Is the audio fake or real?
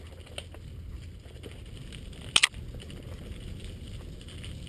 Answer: real